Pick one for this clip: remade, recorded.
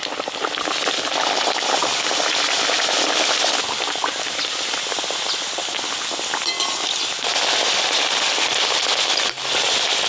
recorded